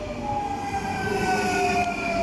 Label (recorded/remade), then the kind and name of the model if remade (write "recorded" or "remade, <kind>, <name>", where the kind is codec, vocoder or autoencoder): recorded